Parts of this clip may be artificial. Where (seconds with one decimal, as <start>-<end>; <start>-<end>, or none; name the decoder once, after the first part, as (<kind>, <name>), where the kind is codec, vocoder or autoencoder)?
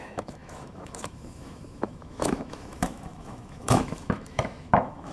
0.0-5.1 (autoencoder, DAC-VAE)